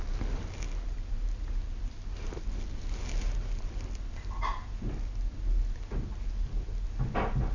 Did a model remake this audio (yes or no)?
no